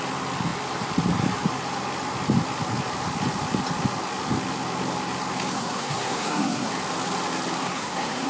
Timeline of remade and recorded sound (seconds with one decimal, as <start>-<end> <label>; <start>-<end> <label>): 0.0-5.5 recorded; 5.5-6.7 remade; 6.7-7.6 recorded; 7.6-8.3 remade